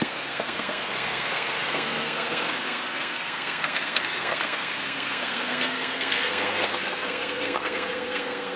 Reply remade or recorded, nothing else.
remade